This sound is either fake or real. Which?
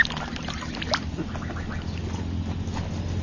real